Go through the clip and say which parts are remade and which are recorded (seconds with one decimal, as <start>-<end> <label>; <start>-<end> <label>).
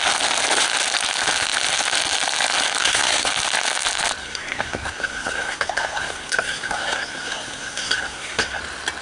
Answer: 0.0-2.8 recorded; 2.8-3.3 remade; 3.3-4.2 recorded; 4.2-8.6 remade; 8.6-9.0 recorded